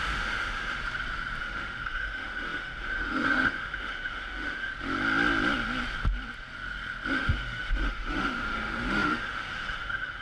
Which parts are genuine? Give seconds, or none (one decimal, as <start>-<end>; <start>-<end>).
0.8-1.4; 4.7-7.1